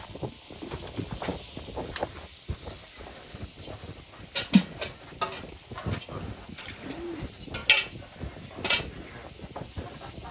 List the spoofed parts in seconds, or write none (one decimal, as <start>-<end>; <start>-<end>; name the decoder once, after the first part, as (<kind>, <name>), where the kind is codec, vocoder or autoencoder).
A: none